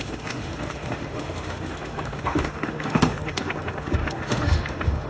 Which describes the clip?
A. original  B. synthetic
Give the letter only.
B